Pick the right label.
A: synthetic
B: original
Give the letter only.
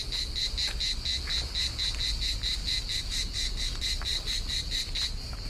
B